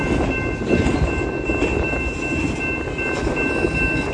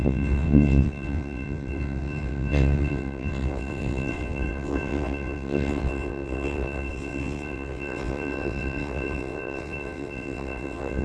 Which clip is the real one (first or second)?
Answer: first